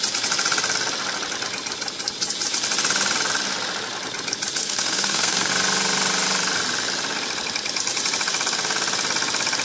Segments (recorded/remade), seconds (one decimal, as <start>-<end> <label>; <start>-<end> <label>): 0.0-4.6 recorded; 4.6-5.5 remade; 5.5-9.6 recorded